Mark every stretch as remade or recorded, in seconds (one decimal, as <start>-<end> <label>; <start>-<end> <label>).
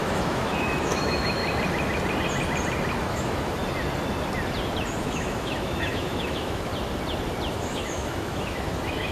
0.0-1.4 remade; 1.4-3.0 recorded; 3.0-3.6 remade; 3.6-5.0 recorded; 5.0-6.7 remade; 6.7-7.5 recorded; 7.5-9.1 remade